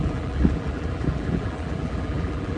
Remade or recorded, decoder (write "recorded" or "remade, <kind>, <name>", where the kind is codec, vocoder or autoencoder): remade, vocoder, BigVGAN v2